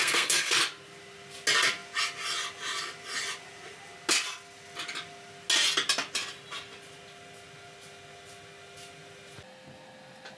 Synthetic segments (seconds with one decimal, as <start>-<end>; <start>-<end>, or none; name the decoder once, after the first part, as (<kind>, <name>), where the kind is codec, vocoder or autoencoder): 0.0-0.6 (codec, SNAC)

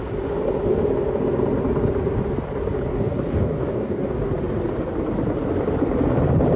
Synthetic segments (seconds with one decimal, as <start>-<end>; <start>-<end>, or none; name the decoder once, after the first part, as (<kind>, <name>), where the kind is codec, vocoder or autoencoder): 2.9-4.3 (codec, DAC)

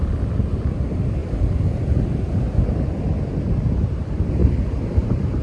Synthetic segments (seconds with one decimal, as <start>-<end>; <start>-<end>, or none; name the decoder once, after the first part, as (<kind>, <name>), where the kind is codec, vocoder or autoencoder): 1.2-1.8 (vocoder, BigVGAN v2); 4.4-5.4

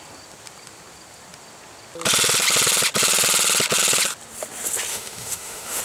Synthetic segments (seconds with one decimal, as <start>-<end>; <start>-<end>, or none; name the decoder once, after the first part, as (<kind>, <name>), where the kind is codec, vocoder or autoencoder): 4.9-5.8 (autoencoder, DAC-VAE)

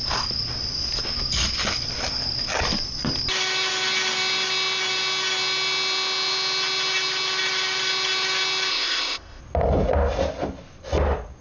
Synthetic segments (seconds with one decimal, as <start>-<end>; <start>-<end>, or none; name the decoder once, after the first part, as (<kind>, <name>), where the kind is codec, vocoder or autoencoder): 8.7-9.4 (codec, ZipCodec)

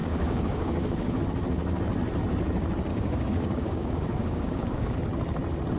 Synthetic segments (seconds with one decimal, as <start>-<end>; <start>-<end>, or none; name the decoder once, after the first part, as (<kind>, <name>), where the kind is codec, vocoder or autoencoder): 0.0-1.2 (codec, DAC); 2.9-5.0